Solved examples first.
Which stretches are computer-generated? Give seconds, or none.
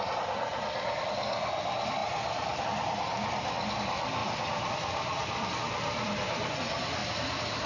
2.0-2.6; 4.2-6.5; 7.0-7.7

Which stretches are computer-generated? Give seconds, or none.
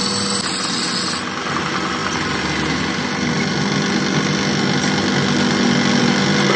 none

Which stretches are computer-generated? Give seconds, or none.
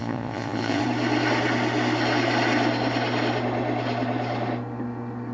0.0-0.8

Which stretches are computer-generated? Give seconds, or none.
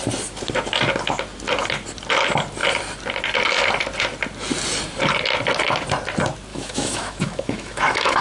6.5-8.2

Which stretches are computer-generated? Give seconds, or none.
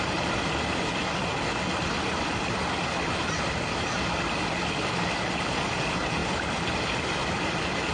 none